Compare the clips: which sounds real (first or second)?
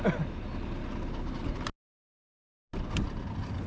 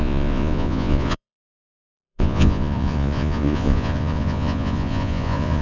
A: first